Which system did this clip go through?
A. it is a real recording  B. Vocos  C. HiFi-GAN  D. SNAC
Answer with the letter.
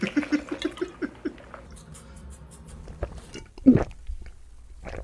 A